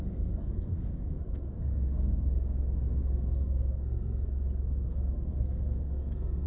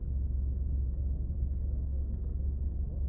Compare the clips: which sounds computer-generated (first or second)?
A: first